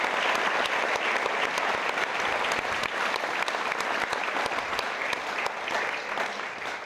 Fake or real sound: real